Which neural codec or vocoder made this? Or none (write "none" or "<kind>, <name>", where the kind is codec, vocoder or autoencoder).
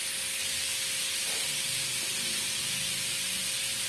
none